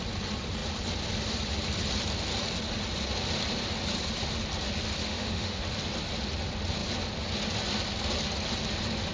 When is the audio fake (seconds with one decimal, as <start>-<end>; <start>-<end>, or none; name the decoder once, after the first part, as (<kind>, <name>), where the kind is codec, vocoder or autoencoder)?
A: 5.0-5.6 (autoencoder, DAC-VAE)